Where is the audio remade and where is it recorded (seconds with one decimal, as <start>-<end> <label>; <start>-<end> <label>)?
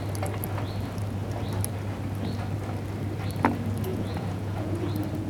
0.0-3.9 recorded; 3.9-4.8 remade; 4.8-5.3 recorded